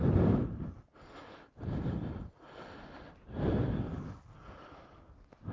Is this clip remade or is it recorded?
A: recorded